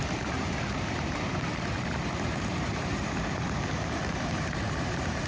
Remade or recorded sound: remade